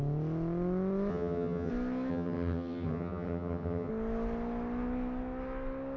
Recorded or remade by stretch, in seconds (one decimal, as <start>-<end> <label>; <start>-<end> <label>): 0.0-1.1 recorded; 1.1-1.7 remade; 1.7-2.1 recorded; 2.1-3.9 remade; 3.9-6.0 recorded